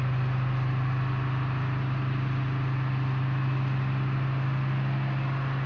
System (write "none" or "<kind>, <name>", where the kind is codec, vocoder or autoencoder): none